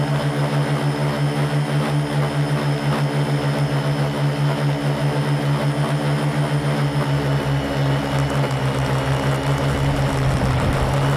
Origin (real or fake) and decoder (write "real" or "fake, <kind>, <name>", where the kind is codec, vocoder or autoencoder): real